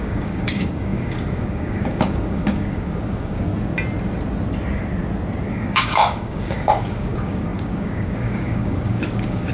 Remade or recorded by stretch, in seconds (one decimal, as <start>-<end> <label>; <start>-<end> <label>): 0.0-3.5 remade; 3.5-5.5 recorded; 5.5-9.5 remade